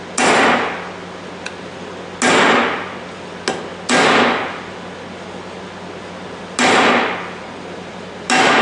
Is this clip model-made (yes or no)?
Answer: no